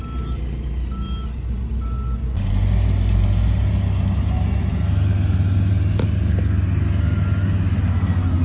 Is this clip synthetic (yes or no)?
no